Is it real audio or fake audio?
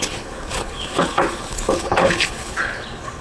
fake